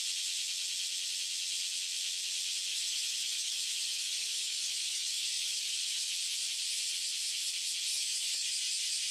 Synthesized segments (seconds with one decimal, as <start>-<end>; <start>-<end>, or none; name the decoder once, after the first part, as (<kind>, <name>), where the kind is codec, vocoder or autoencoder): 2.7-6.1 (codec, DAC); 7.9-8.5